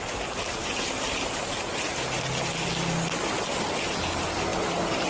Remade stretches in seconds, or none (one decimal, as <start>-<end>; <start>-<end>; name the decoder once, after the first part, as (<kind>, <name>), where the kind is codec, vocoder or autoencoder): none